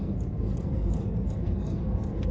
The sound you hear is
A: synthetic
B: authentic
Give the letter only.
A